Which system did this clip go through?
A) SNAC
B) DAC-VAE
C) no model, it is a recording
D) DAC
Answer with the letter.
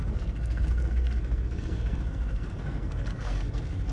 A